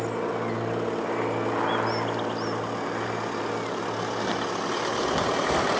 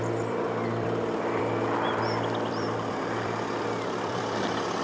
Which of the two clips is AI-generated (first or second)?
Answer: second